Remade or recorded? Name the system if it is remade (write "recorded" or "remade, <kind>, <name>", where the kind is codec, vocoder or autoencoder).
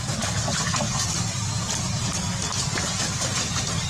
recorded